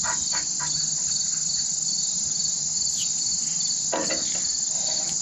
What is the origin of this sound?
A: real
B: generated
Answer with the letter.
A